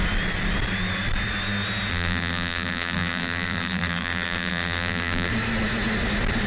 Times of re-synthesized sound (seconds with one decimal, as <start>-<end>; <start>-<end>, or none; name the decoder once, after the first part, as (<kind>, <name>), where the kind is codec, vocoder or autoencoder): 1.9-5.3 (vocoder, BigVGAN v2)